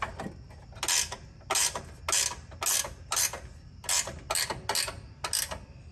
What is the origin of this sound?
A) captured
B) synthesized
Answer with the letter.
A